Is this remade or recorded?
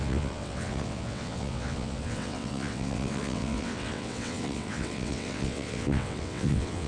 remade